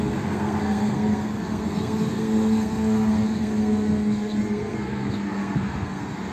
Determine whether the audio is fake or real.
fake